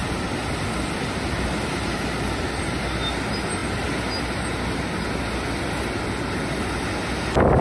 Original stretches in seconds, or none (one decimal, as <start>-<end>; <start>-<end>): 0.0-7.6